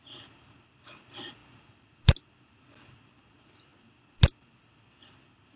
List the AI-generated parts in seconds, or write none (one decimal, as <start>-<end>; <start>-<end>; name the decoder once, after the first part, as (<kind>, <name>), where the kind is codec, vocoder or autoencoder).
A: none